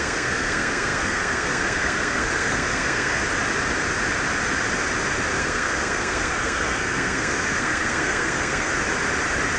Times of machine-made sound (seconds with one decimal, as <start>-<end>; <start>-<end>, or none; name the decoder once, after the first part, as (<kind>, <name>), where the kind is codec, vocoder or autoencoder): 0.0-3.2 (codec, SNAC); 5.4-8.7